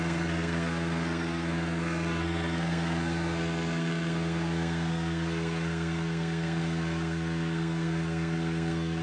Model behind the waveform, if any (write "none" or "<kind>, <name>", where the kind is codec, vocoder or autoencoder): codec, SNAC